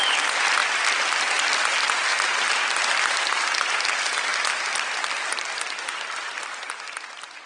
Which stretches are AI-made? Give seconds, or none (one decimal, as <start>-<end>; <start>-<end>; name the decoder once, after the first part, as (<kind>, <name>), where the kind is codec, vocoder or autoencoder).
2.1-3.3 (vocoder, BigVGAN v2); 4.3-7.5